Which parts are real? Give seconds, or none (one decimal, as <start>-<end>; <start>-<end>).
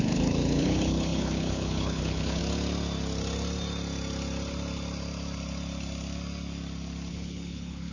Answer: 2.4-7.1